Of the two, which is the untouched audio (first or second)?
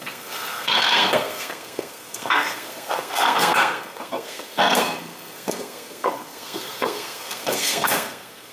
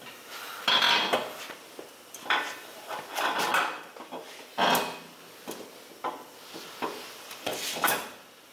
second